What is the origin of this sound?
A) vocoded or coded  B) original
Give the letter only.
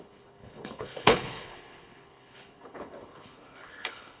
A